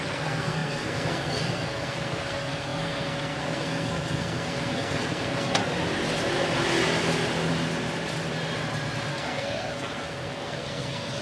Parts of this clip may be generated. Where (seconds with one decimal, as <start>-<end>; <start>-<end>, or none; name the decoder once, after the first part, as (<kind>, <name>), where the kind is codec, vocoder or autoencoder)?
0.0-5.6 (codec, SNAC); 9.1-11.2

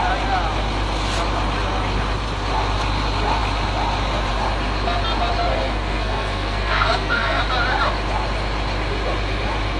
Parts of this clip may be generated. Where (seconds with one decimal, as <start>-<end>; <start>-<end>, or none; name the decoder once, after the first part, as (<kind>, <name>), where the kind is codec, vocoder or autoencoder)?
5.5-7.4 (codec, SNAC)